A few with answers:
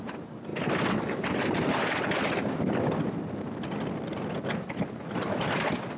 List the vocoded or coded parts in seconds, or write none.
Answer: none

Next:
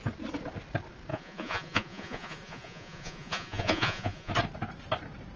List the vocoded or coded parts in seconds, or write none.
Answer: 1.1-4.3 (vocoder, Vocos)

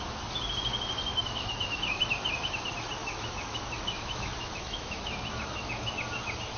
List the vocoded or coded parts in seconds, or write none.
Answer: 1.1-2.0 (autoencoder, DAC-VAE); 3.0-5.9

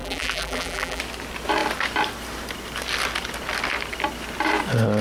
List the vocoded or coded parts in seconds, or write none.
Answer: 0.0-1.0 (vocoder, BigVGAN v2)

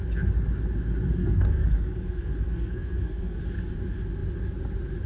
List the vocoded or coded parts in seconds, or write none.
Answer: 1.2-3.4 (codec, SNAC)

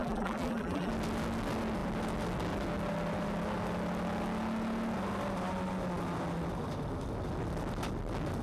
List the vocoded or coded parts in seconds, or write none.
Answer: 0.0-0.9 (vocoder, BigVGAN v2)

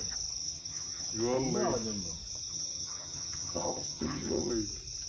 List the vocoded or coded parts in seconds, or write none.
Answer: 0.4-1.1 (vocoder, HiFi-GAN); 2.5-4.5